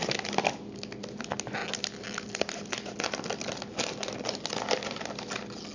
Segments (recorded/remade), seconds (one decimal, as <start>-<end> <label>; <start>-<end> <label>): 0.0-5.7 recorded